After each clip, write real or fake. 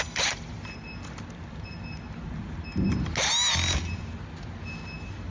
real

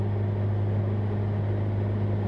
real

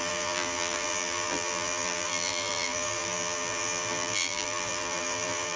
fake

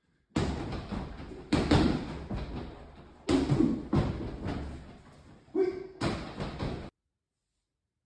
real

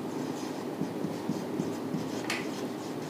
real